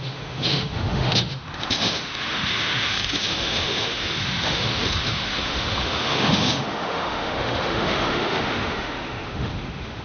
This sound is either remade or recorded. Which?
remade